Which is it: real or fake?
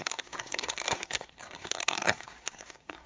fake